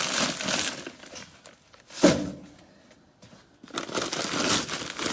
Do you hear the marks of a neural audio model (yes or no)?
no